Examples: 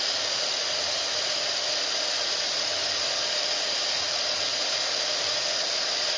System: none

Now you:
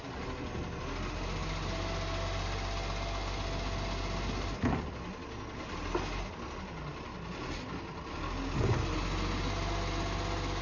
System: none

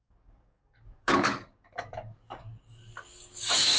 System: codec, DAC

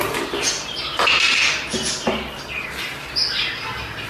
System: none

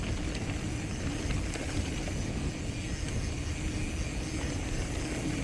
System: none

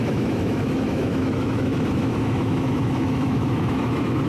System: autoencoder, DAC-VAE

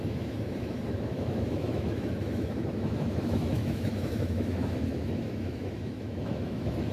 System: autoencoder, DAC-VAE